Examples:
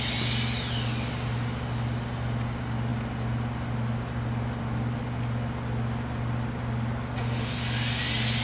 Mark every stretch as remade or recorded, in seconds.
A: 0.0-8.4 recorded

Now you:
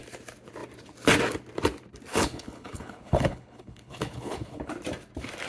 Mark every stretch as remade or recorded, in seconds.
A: 0.0-2.1 recorded; 2.1-4.6 remade; 4.6-5.5 recorded